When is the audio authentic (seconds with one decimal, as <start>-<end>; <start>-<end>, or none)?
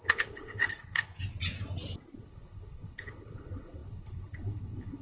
1.1-2.2